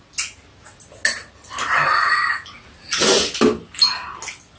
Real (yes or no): yes